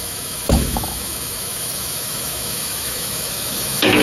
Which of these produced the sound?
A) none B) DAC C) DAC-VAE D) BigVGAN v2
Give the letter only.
C